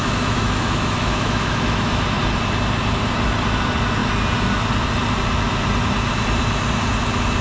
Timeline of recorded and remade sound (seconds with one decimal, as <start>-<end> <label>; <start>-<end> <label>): 0.0-2.2 remade; 2.2-7.4 recorded